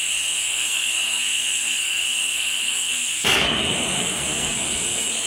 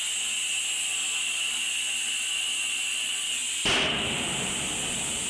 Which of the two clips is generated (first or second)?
first